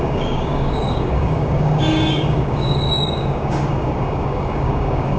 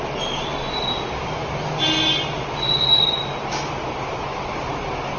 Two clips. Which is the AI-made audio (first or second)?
first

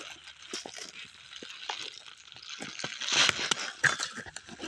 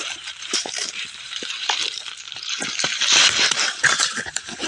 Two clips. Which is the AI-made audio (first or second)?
second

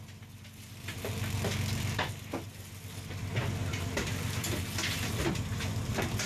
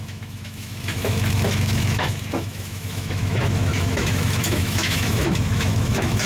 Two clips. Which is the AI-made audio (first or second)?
second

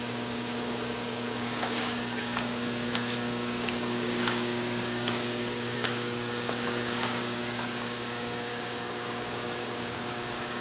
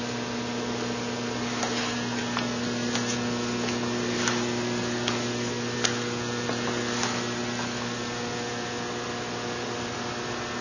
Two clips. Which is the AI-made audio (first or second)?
first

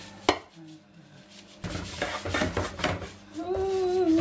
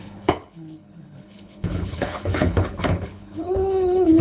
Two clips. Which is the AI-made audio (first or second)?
second